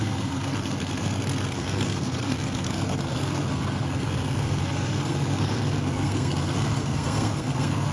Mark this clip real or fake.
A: fake